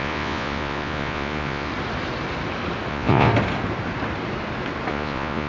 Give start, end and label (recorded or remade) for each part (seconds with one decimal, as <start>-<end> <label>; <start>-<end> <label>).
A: 0.0-1.7 remade; 1.7-2.9 recorded; 2.9-3.3 remade; 3.3-4.9 recorded; 4.9-5.5 remade